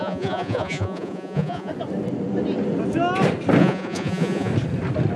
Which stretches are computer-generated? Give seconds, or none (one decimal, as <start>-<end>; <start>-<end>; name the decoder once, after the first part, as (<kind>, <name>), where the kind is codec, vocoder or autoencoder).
0.0-1.7 (vocoder, Vocos); 3.6-4.5